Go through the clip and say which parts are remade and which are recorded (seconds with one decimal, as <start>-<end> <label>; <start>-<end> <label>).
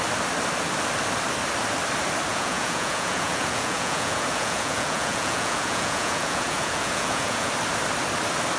0.0-2.3 recorded; 2.3-7.5 remade; 7.5-8.6 recorded